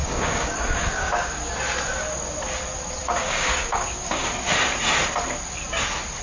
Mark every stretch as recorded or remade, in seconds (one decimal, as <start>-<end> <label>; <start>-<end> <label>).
0.0-1.6 remade; 1.6-3.0 recorded; 3.0-4.3 remade; 4.3-6.2 recorded